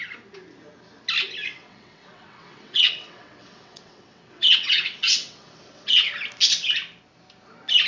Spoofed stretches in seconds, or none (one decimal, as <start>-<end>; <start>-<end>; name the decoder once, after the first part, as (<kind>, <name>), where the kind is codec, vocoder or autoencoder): 1.4-6.1 (vocoder, WaveNeXt)